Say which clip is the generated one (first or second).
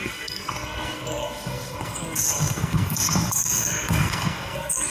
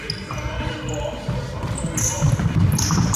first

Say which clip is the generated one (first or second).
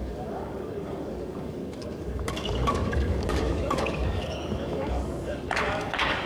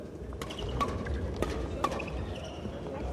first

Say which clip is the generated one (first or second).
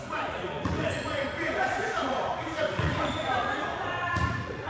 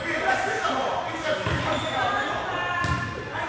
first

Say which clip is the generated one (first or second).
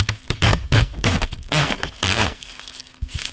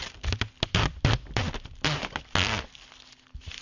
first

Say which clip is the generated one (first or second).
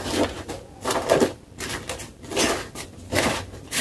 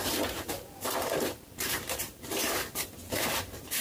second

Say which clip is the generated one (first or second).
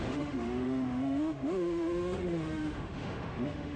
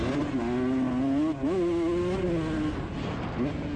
first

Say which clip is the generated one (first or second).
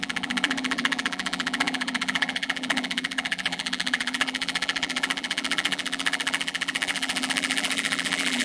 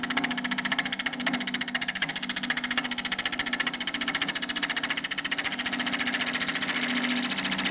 first